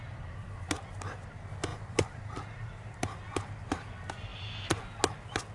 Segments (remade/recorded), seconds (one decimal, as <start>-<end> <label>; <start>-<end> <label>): 0.0-1.7 recorded; 1.7-3.2 remade; 3.2-5.5 recorded